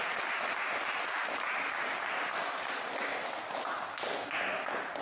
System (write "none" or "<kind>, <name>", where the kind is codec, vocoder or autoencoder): none